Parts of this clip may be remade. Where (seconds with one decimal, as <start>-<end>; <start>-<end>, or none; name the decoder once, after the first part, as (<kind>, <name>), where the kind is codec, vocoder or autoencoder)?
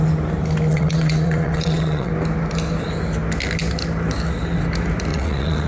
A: 0.7-2.1 (vocoder, WaveNeXt); 5.1-5.7